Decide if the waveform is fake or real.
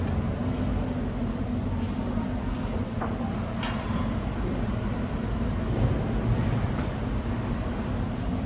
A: real